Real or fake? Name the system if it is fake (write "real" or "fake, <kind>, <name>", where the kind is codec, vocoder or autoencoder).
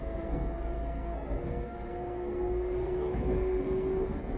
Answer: fake, codec, SNAC